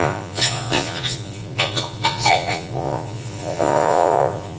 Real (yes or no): no